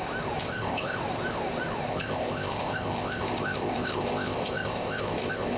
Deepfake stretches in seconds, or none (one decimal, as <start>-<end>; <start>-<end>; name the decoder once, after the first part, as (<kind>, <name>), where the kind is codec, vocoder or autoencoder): 0.4-1.0 (codec, ZipCodec); 1.9-5.6